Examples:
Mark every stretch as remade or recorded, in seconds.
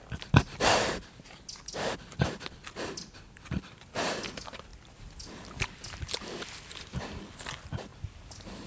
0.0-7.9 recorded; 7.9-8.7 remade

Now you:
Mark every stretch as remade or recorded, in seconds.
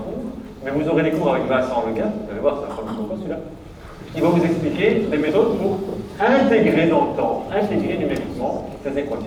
0.0-2.2 recorded; 2.2-5.3 remade; 5.3-5.9 recorded; 5.9-9.3 remade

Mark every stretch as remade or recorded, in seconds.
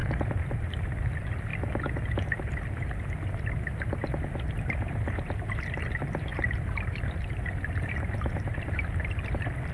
0.0-1.1 remade; 1.1-6.3 recorded; 6.3-9.2 remade; 9.2-9.7 recorded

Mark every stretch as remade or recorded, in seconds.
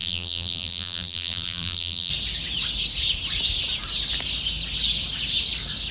0.0-2.1 remade; 2.1-5.9 recorded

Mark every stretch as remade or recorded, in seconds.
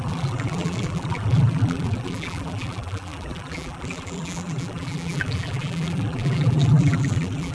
0.0-7.5 remade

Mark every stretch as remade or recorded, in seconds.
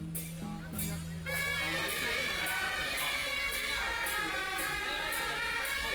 0.0-5.9 recorded